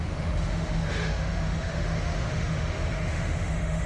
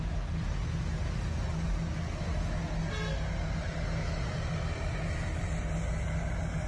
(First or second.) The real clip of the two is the second